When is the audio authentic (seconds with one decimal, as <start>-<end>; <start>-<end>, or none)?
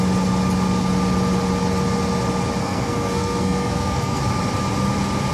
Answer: 0.0-2.6; 4.2-5.3